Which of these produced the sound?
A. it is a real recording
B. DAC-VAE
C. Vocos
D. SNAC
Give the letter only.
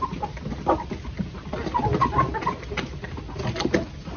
A